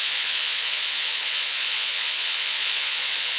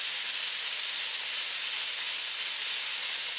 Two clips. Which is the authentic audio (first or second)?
second